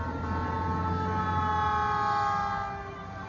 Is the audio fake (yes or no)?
no